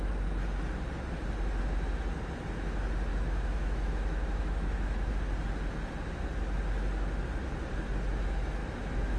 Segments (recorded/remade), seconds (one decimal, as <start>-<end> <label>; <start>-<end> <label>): 0.0-3.1 recorded; 3.1-5.1 remade; 5.1-8.6 recorded; 8.6-9.2 remade